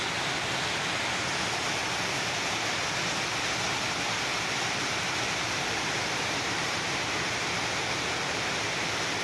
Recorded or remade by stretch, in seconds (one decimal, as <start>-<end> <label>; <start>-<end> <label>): 0.0-1.8 recorded; 1.8-2.7 remade; 2.7-4.3 recorded; 4.3-9.2 remade